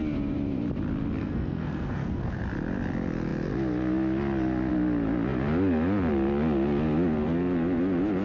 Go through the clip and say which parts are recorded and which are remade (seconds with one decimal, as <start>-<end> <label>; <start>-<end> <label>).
0.0-1.2 recorded; 1.2-2.4 remade; 2.4-8.2 recorded